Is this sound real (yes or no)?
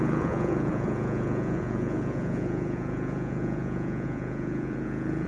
no